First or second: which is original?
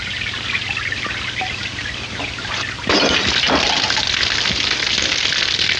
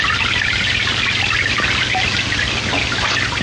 second